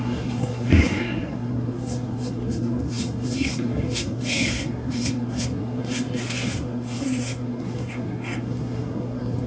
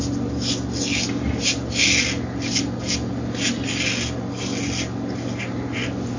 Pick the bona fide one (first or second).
second